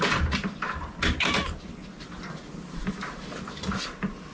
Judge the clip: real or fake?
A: real